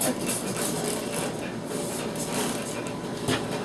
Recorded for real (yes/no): yes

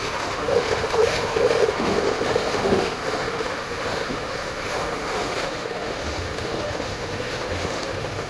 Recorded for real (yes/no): no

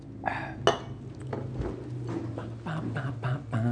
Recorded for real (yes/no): yes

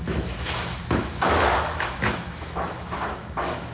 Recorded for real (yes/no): no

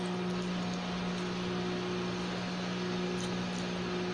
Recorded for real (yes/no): yes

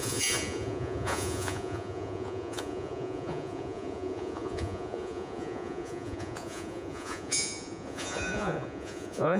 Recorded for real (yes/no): no